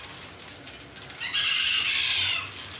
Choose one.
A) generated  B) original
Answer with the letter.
B